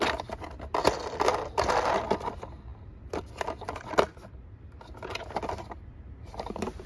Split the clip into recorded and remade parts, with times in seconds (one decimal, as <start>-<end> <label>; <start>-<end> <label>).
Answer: 0.0-6.9 recorded